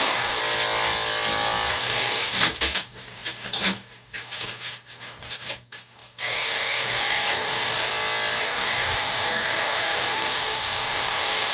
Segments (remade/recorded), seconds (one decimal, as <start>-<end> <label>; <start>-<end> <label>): 0.0-0.4 remade; 0.4-1.7 recorded; 1.7-7.9 remade; 7.9-8.4 recorded; 8.4-11.5 remade